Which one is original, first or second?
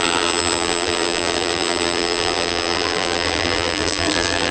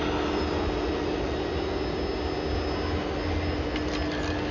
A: second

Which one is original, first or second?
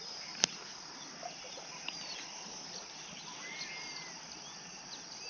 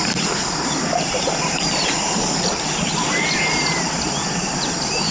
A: first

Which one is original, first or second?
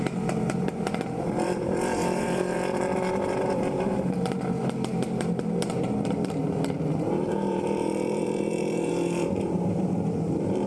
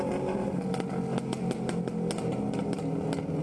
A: second